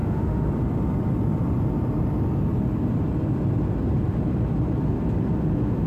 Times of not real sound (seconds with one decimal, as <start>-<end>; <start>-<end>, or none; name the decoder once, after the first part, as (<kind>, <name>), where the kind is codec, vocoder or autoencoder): 0.0-0.5 (autoencoder, DAC-VAE)